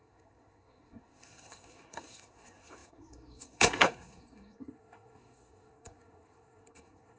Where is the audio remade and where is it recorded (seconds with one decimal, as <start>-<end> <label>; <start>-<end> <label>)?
0.0-7.2 remade